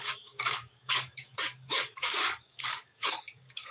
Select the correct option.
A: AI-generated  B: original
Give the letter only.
A